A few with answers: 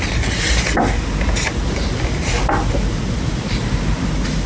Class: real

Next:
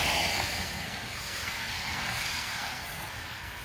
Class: fake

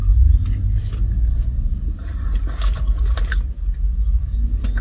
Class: real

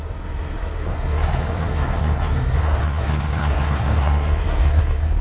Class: fake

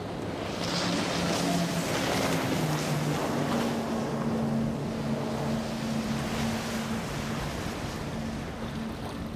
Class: real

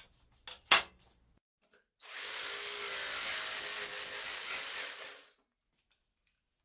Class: real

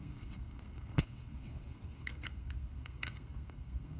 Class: fake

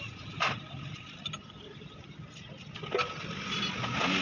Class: real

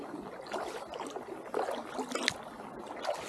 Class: real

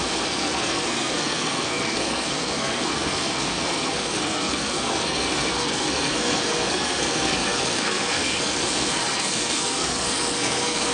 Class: fake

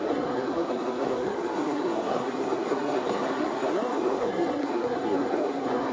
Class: fake